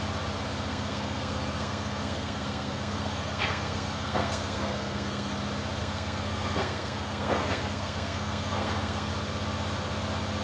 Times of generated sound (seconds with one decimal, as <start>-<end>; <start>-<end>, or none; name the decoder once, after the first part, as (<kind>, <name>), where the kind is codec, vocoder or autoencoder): 0.7-5.3 (codec, SNAC); 5.8-9.1